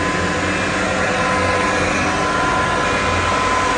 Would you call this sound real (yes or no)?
yes